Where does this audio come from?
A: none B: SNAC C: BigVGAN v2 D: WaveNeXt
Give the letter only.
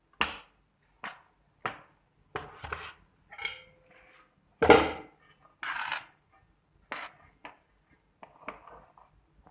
A